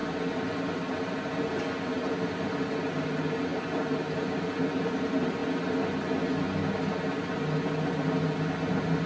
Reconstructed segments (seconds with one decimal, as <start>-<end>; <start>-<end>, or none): none